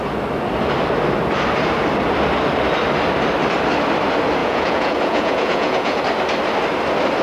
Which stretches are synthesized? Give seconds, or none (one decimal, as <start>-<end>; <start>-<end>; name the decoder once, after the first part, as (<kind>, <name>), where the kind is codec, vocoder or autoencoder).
4.4-6.0 (vocoder, Vocos)